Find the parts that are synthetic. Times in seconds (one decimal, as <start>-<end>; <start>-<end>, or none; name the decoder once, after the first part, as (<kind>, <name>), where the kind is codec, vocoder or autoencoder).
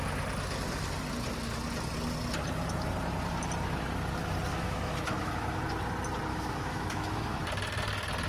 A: 4.5-5.6 (autoencoder, DAC-VAE); 6.3-7.4